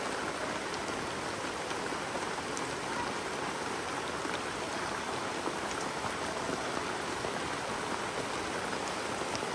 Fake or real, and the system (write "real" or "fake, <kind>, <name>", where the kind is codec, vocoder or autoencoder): real